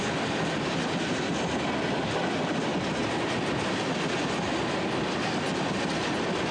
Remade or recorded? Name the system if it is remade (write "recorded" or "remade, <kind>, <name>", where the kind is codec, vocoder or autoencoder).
recorded